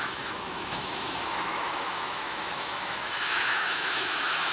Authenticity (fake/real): fake